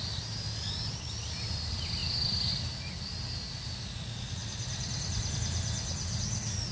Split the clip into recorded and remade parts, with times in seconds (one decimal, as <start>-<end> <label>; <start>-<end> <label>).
0.0-6.7 recorded